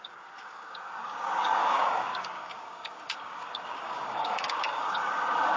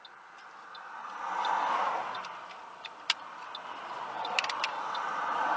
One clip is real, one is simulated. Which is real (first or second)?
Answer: second